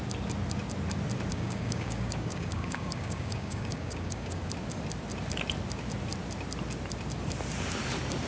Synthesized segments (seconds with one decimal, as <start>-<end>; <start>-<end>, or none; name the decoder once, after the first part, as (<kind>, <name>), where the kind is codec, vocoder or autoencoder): 1.3-4.4 (codec, DAC)